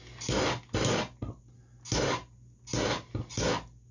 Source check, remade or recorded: recorded